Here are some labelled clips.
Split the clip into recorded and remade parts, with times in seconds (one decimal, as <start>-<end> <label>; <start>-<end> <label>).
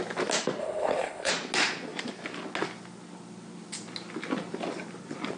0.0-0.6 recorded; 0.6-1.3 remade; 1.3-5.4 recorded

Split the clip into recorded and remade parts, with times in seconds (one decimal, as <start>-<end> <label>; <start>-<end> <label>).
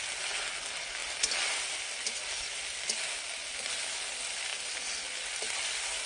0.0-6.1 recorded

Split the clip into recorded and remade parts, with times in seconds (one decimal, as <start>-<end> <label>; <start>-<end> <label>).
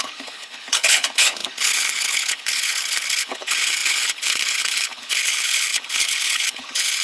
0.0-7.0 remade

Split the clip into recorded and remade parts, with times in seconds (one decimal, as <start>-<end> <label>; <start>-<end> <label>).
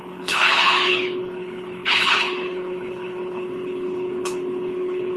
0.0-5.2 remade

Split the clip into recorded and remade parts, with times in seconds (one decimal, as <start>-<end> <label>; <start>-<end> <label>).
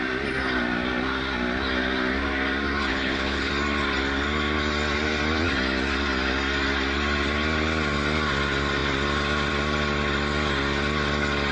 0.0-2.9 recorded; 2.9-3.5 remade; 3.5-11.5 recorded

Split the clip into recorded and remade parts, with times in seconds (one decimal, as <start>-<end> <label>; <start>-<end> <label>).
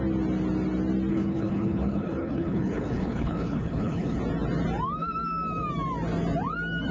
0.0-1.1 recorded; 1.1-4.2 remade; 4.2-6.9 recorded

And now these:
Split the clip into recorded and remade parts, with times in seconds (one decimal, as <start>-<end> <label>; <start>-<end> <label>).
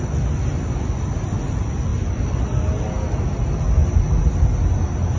0.0-5.2 recorded